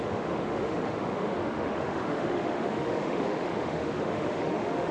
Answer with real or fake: fake